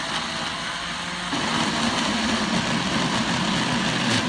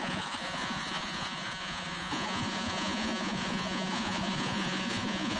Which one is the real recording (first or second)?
first